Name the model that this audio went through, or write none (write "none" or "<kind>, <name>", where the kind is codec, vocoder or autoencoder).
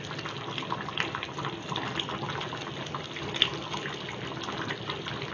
none